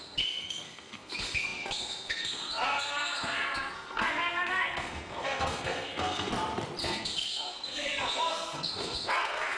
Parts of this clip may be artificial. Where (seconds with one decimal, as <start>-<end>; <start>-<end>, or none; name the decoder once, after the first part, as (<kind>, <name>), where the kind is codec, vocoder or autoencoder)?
0.0-6.3 (codec, SNAC); 6.8-9.6